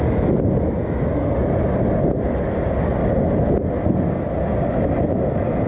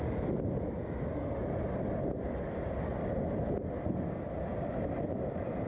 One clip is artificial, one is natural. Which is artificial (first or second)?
second